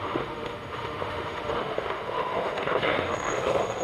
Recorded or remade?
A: remade